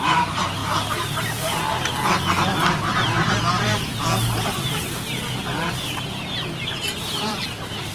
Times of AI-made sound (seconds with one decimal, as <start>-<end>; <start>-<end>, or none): 0.0-0.6; 2.7-3.9; 6.6-7.9